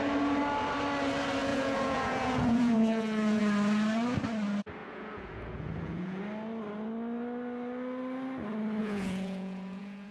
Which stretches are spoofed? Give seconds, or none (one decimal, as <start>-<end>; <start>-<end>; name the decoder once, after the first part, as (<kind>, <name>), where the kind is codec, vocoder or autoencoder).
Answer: 1.5-3.4 (vocoder, Vocos); 4.8-6.2; 8.8-10.1